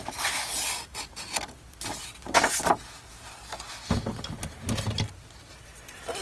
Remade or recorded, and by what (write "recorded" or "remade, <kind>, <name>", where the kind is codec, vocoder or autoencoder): recorded